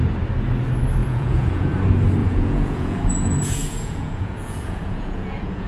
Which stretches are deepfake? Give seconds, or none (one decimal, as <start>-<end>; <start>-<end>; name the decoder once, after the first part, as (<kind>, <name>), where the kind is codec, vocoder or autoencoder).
1.0-1.7 (vocoder, Vocos); 2.2-5.7